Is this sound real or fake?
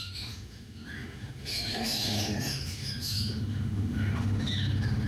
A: fake